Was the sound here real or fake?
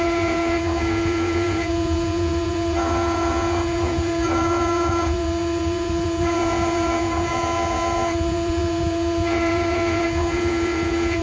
fake